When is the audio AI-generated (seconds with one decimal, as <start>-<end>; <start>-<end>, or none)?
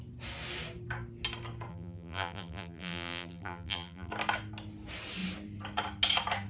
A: 1.7-4.1